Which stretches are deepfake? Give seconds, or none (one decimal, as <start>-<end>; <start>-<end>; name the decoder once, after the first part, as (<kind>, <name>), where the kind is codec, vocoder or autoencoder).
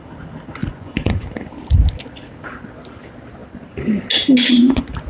0.6-1.2 (vocoder, Vocos)